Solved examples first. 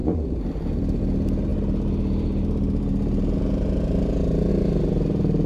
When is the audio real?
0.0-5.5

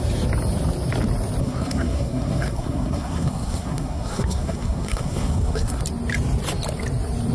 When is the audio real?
0.0-1.4; 5.8-7.3